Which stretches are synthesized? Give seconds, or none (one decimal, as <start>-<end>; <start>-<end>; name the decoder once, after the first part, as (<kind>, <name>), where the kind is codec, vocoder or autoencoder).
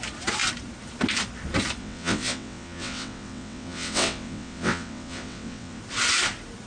1.8-5.8 (vocoder, WaveNeXt)